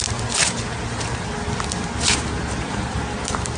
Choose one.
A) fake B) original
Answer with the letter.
B